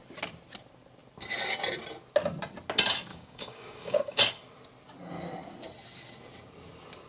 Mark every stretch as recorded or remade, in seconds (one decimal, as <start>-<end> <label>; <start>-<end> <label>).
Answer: 0.0-3.1 recorded; 3.1-4.2 remade; 4.2-7.1 recorded